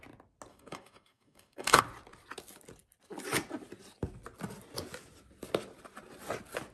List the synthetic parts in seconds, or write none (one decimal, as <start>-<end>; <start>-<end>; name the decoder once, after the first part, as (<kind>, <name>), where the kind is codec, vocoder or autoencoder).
0.5-1.8 (codec, DAC)